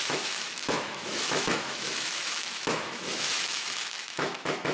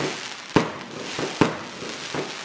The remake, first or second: first